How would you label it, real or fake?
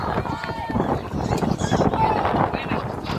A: real